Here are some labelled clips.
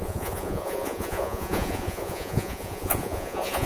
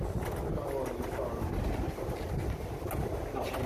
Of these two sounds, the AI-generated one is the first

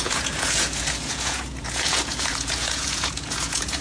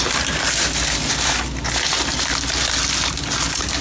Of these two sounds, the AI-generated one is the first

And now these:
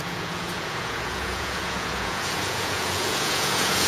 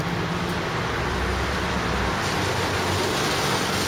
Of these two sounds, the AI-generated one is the first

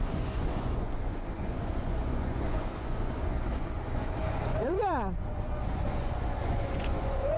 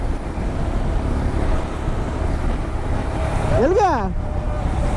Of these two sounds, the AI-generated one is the first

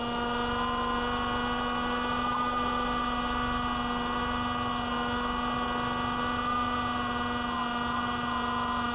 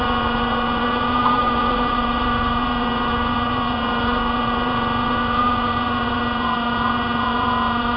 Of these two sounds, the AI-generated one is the second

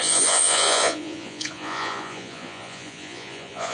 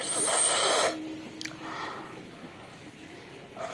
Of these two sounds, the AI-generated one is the first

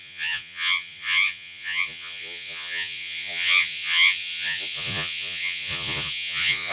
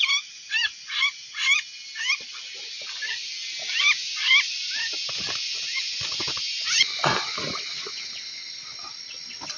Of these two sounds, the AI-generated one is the first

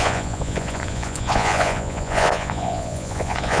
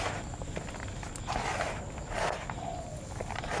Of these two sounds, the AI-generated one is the first